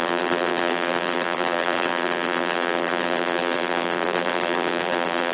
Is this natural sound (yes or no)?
no